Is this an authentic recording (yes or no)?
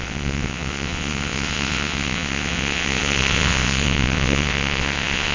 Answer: no